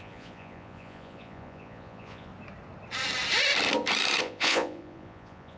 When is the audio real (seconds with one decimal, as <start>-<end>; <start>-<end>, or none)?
2.3-4.2